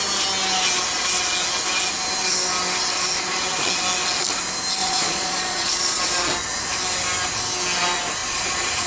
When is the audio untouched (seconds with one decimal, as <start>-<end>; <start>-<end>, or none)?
0.0-4.8; 6.0-8.2